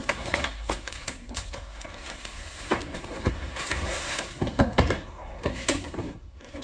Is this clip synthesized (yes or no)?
yes